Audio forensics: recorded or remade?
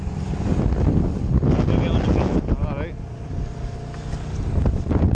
recorded